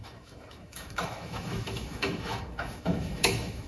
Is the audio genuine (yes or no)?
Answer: no